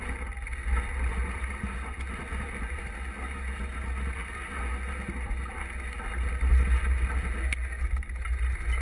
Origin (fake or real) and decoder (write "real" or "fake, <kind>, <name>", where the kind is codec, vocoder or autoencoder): real